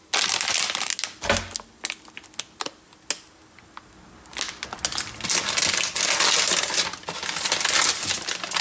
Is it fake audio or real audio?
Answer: real